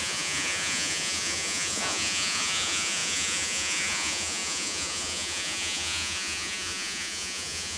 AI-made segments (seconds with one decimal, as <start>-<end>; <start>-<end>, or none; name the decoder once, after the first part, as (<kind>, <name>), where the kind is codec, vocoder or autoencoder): 0.0-7.8 (vocoder, Vocos)